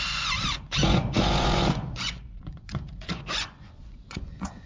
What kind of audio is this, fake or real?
fake